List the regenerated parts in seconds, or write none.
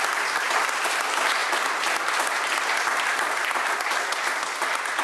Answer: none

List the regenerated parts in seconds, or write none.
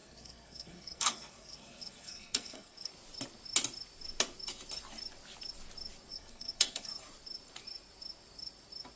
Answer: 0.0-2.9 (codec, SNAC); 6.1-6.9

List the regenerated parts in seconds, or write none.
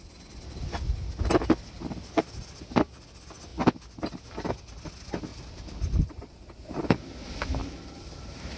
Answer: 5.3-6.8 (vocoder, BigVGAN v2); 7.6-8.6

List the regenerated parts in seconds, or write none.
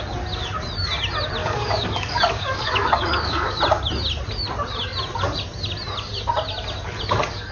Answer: 1.4-3.6 (codec, DAC)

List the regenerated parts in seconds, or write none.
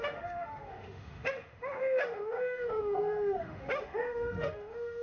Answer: 0.0-5.0 (autoencoder, DAC-VAE)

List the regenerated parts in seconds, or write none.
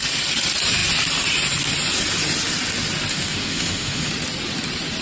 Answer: 3.1-4.1 (autoencoder, DAC-VAE)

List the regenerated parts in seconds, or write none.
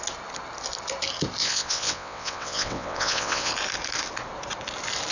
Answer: 1.4-3.5 (vocoder, WaveNeXt)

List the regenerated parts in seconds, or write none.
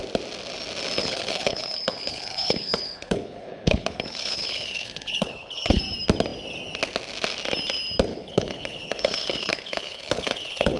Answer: 1.0-5.8 (codec, HILCodec); 8.1-10.8